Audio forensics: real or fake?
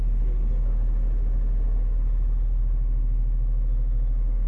real